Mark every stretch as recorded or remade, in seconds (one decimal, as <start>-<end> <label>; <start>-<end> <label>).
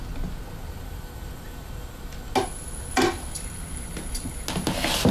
0.0-5.1 recorded